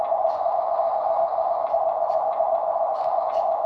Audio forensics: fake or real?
fake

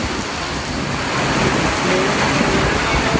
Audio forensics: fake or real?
real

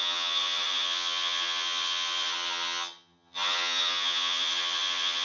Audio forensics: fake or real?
fake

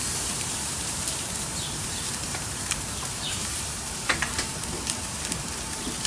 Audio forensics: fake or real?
fake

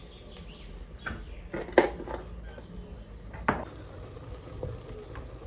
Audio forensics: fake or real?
real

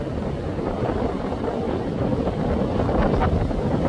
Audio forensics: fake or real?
real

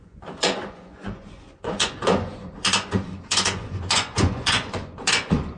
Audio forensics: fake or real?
fake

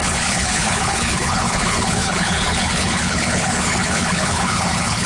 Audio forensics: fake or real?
fake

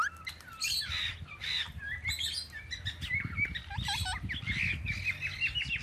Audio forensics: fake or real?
real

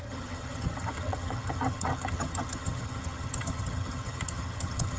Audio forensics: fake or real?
fake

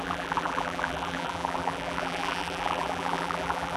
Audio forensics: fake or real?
fake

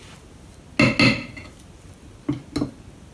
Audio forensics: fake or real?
real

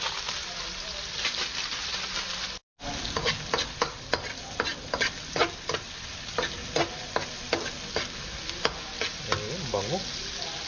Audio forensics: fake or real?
real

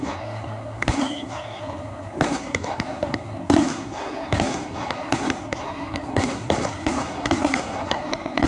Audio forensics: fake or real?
fake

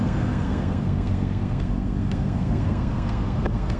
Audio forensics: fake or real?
fake